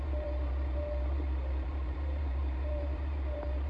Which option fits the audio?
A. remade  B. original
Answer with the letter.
A